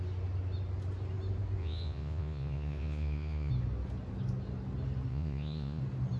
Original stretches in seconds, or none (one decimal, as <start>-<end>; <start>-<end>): 0.0-1.6; 3.5-5.1; 5.8-6.2